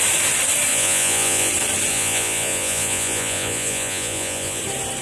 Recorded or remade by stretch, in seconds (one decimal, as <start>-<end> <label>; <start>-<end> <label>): 0.0-0.7 recorded; 0.7-1.5 remade; 1.5-1.9 recorded; 1.9-4.6 remade; 4.6-5.0 recorded